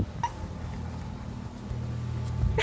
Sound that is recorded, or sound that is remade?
recorded